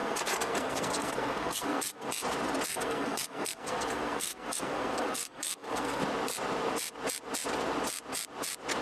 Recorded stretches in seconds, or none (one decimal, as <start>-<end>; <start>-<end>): 2.1-2.7; 6.0-8.8